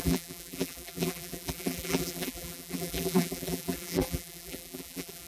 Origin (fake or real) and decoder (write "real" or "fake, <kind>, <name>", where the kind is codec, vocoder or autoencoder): fake, vocoder, BigVGAN v2